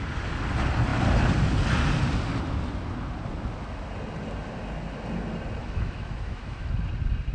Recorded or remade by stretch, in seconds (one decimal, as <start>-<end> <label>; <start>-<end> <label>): 0.0-5.6 recorded; 5.6-6.7 remade; 6.7-7.3 recorded